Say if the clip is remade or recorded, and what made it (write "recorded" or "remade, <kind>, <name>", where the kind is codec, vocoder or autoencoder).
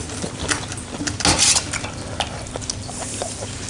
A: recorded